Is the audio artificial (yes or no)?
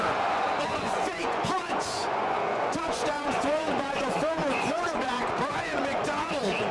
yes